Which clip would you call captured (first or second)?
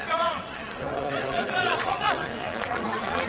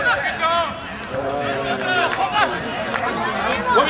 second